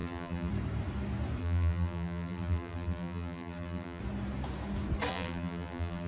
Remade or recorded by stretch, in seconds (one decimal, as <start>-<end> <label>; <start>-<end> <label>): 0.0-0.5 remade; 0.5-1.4 recorded; 1.4-4.0 remade; 4.0-5.1 recorded; 5.1-6.1 remade